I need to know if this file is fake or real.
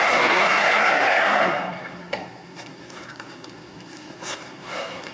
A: fake